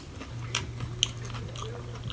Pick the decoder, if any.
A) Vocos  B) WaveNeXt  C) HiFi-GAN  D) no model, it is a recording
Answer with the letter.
D